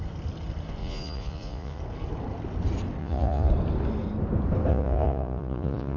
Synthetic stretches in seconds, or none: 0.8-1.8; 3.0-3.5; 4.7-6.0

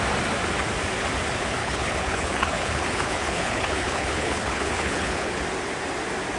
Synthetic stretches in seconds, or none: 1.6-5.4

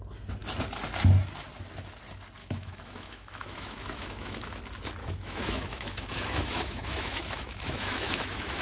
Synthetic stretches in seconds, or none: 2.4-4.6; 5.0-8.6

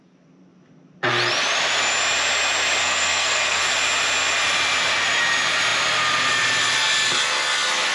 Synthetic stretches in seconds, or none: 2.8-3.6

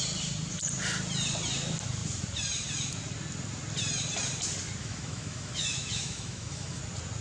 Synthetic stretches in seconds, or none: 4.8-6.8

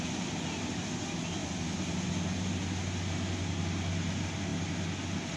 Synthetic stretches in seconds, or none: none

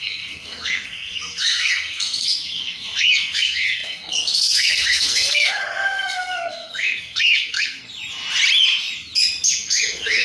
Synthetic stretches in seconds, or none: 0.0-7.9; 9.5-10.2